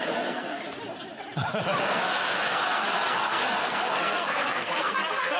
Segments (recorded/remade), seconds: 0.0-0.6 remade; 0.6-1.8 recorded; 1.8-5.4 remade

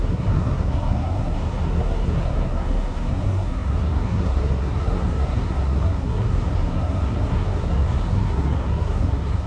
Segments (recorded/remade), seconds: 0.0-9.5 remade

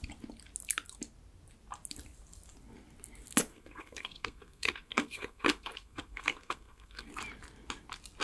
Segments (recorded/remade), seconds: 0.0-3.5 recorded; 3.5-7.1 remade; 7.1-8.2 recorded

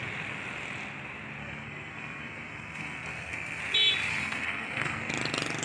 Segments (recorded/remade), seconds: 0.0-1.4 recorded; 1.4-3.6 remade; 3.6-4.1 recorded; 4.1-5.1 remade; 5.1-5.6 recorded